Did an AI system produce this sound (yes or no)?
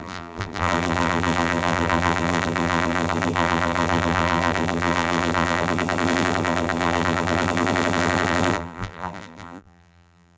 yes